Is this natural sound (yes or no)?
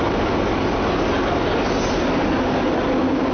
yes